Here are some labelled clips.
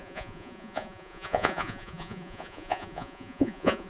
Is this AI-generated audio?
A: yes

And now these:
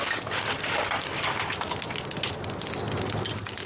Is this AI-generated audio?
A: no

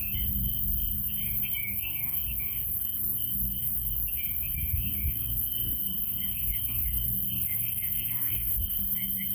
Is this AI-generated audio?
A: yes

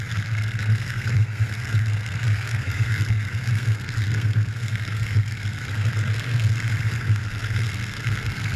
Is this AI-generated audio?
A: yes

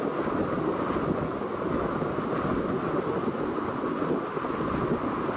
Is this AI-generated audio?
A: no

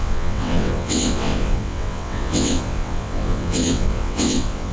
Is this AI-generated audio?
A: yes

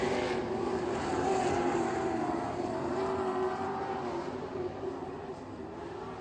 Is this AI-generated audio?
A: yes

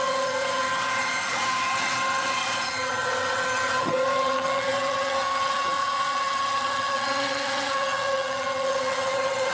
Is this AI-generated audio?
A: yes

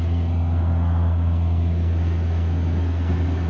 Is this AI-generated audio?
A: yes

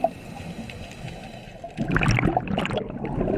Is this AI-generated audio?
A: no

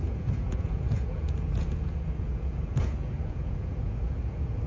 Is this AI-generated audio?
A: yes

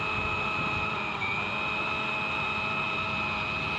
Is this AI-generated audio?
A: no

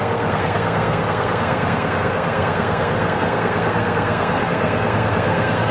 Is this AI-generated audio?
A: yes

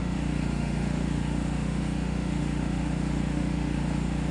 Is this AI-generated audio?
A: yes